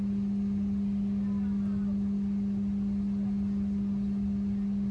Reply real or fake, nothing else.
real